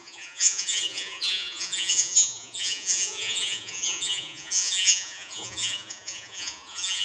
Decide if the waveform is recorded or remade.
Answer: remade